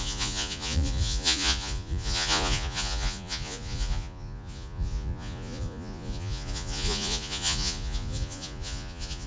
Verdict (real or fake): fake